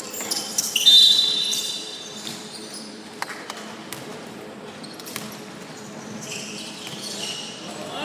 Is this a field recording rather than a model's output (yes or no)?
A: no